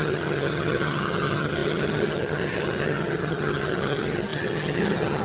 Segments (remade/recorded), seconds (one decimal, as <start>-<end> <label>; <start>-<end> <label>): 0.0-5.2 remade